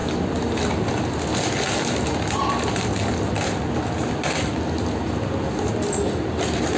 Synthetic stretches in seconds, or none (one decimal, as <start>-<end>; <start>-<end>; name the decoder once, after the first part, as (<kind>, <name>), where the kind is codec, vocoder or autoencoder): none